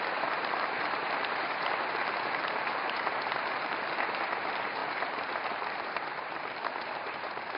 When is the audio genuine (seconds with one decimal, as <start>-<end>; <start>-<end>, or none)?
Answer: none